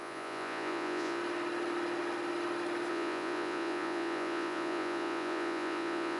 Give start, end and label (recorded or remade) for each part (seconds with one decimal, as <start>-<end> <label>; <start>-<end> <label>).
0.0-1.2 remade; 1.2-2.9 recorded; 2.9-6.2 remade